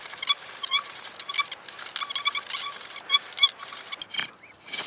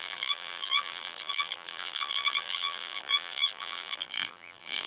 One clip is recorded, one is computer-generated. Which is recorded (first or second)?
first